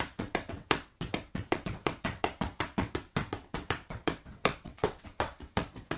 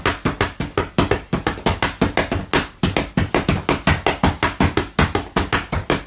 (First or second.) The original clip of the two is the second